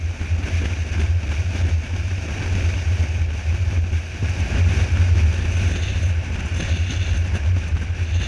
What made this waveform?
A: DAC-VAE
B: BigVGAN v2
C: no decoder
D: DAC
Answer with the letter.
C